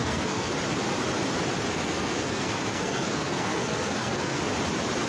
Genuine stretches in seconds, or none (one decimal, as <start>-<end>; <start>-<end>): 0.5-1.7; 4.4-5.1